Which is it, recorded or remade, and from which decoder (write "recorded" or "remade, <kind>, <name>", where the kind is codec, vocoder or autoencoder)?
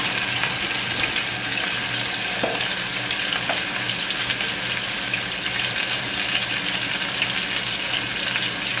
recorded